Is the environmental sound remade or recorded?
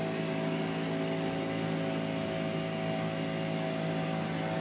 recorded